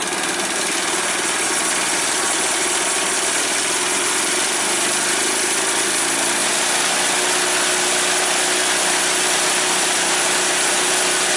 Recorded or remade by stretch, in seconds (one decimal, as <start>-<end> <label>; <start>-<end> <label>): 0.0-11.4 recorded